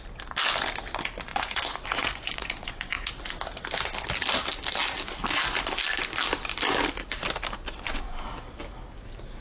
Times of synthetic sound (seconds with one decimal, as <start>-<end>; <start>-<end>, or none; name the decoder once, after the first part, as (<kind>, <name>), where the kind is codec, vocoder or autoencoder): 1.3-3.1 (vocoder, Vocos)